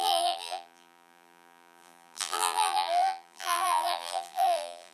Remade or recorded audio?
remade